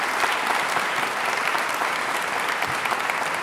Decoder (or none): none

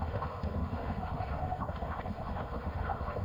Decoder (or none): autoencoder, DAC-VAE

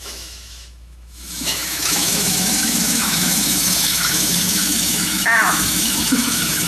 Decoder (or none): autoencoder, DAC-VAE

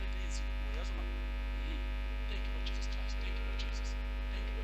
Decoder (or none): none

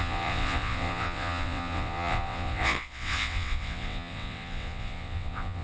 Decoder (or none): vocoder, WaveNeXt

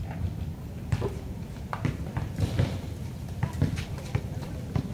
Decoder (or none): vocoder, BigVGAN v2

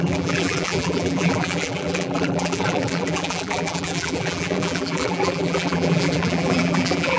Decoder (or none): vocoder, BigVGAN v2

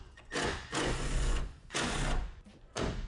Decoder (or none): vocoder, Vocos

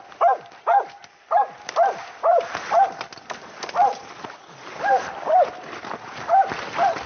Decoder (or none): none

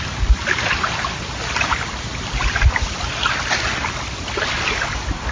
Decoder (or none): none